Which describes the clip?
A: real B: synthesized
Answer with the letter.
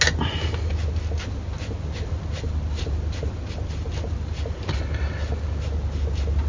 A